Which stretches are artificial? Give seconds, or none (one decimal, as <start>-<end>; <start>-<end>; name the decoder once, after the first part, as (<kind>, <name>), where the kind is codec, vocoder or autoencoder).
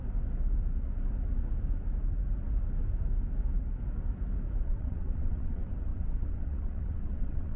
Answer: 4.6-7.6 (vocoder, WaveNeXt)